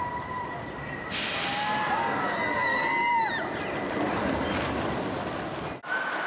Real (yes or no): yes